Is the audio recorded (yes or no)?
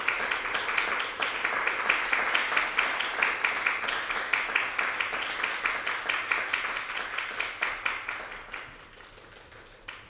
yes